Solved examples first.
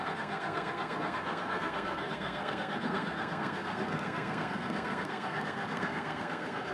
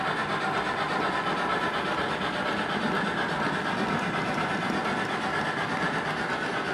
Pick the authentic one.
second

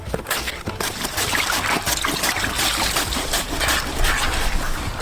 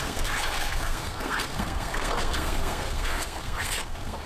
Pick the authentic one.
first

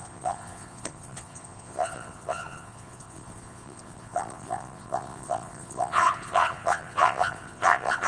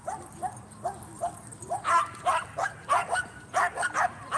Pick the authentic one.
second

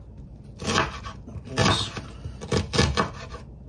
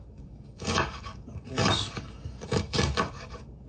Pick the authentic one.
first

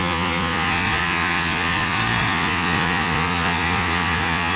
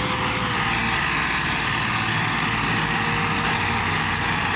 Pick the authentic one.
second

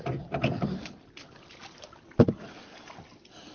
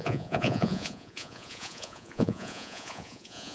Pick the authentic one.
first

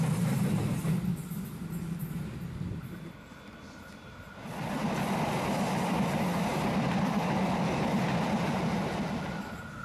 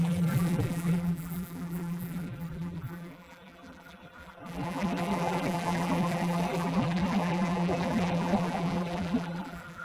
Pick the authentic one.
first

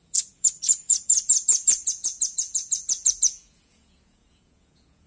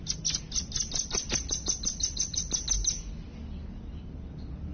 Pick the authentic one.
second